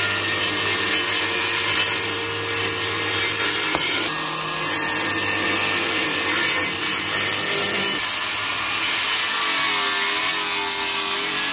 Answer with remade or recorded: recorded